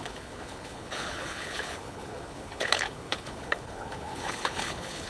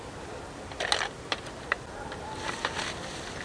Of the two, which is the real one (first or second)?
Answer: second